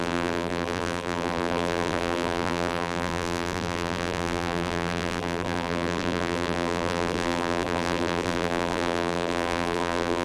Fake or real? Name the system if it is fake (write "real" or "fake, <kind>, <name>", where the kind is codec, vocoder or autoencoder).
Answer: fake, vocoder, BigVGAN v2